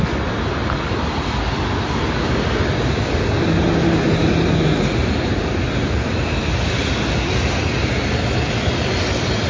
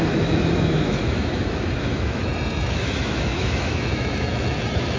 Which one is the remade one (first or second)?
second